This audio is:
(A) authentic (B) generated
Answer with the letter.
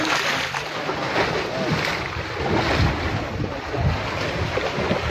A